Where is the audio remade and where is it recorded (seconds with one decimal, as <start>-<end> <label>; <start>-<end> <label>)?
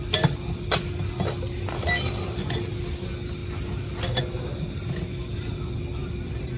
0.0-6.6 recorded